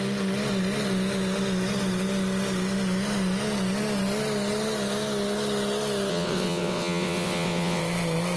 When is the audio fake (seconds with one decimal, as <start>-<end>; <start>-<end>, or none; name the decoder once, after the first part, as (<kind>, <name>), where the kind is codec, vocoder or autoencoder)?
6.1-7.8 (vocoder, WaveNeXt)